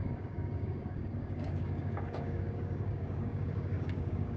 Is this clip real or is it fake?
fake